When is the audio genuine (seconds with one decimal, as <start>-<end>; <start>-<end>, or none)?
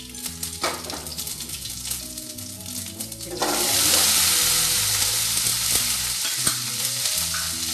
0.0-1.1; 2.6-7.7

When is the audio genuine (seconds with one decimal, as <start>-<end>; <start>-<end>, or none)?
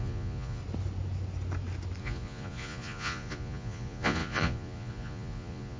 0.6-2.0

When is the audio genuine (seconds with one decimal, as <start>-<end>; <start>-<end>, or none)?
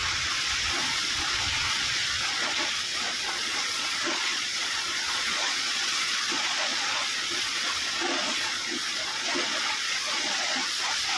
none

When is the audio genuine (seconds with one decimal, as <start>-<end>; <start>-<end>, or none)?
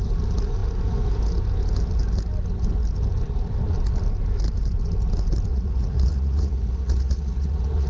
0.0-5.5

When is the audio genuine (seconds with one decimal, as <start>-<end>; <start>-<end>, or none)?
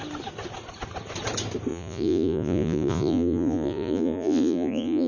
0.0-1.7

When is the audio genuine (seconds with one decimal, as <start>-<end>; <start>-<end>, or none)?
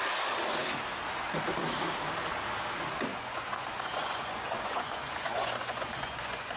0.0-3.1